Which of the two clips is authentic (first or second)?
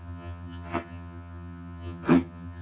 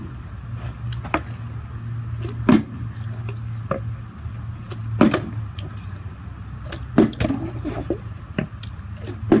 second